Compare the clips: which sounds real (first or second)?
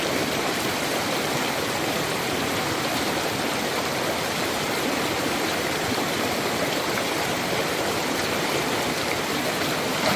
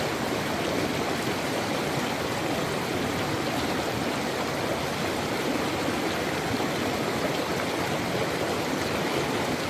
second